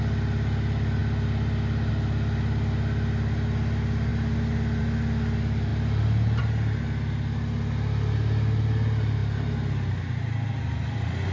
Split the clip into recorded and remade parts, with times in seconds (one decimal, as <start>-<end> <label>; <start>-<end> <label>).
0.0-11.3 recorded